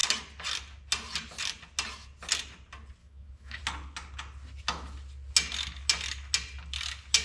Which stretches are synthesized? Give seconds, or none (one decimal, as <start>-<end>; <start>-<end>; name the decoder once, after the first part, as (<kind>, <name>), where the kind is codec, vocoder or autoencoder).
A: 3.0-3.6 (autoencoder, DAC-VAE)